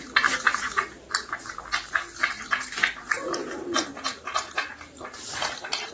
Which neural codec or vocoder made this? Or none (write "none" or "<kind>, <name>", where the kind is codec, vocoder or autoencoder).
none